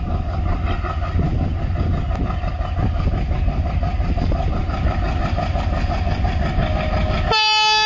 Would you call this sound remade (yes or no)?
no